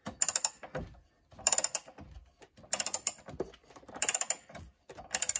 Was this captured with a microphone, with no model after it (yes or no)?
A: yes